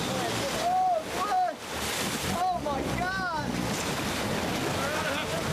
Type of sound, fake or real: real